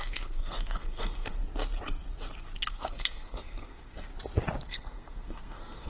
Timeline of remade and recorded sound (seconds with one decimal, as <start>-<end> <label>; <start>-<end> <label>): 0.0-1.4 remade; 1.4-2.7 recorded; 2.7-4.1 remade; 4.1-4.7 recorded; 4.7-5.9 remade

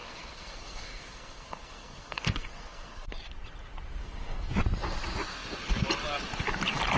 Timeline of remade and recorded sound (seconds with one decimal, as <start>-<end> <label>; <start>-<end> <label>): 0.0-3.1 remade; 3.1-4.0 recorded; 4.0-4.5 remade; 4.5-7.0 recorded

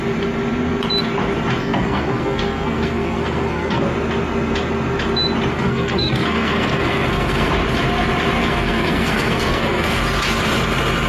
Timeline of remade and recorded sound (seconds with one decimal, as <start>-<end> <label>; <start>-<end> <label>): 0.0-1.6 recorded; 1.6-3.8 remade; 3.8-5.5 recorded; 5.5-7.5 remade; 7.5-8.4 recorded; 8.4-10.0 remade; 10.0-11.1 recorded

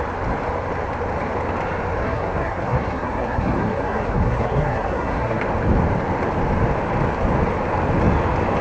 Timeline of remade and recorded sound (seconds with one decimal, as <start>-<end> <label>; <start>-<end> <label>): 0.0-2.0 recorded; 2.0-5.4 remade; 5.4-8.6 recorded

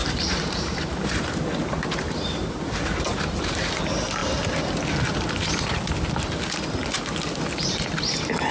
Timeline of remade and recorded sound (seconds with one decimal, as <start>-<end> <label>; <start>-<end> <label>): 0.0-3.8 remade; 3.8-8.5 recorded

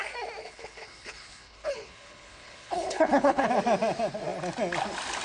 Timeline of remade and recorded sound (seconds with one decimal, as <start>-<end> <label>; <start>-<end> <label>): 0.0-0.4 recorded; 0.4-3.5 remade; 3.5-5.2 recorded